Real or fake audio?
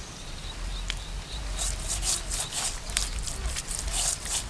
real